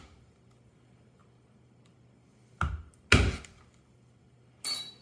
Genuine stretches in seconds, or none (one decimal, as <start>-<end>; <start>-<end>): 0.0-5.0